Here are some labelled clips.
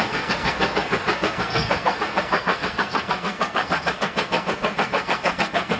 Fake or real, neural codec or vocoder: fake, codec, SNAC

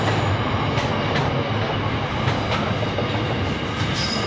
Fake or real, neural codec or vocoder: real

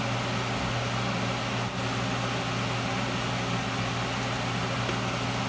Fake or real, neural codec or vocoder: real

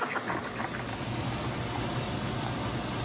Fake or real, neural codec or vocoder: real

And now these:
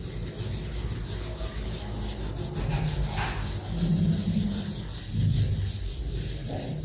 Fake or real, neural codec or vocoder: real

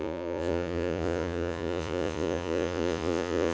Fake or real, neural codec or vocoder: fake, vocoder, Vocos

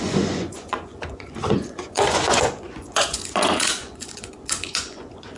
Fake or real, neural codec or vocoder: fake, vocoder, Vocos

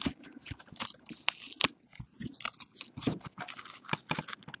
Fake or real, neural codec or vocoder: real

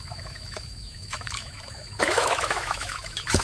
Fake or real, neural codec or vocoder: fake, autoencoder, DAC-VAE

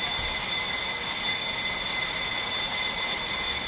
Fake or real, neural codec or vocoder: real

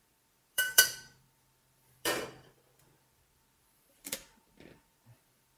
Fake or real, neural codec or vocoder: fake, vocoder, BigVGAN v2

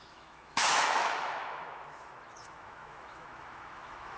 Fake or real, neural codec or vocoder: fake, autoencoder, DAC-VAE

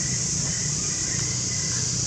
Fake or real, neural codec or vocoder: real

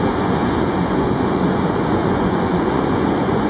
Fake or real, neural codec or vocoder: fake, vocoder, Vocos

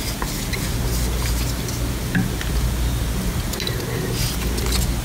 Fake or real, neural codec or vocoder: real